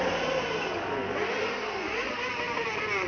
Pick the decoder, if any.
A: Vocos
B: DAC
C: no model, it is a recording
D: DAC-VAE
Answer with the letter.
C